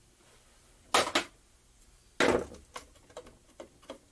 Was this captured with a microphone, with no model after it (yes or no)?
yes